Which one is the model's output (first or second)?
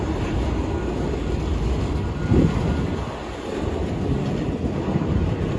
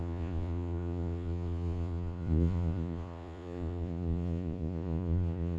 second